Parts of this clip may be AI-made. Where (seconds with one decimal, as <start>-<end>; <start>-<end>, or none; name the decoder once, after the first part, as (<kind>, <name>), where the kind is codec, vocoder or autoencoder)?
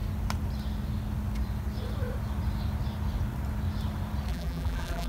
4.3-5.1 (vocoder, BigVGAN v2)